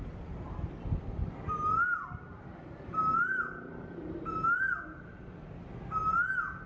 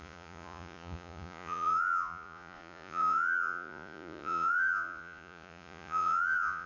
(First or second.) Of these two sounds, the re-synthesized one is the second